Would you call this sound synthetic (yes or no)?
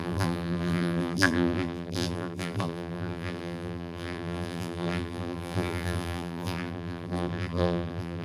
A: yes